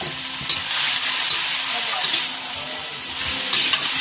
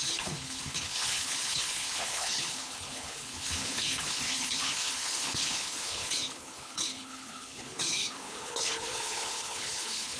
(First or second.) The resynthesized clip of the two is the second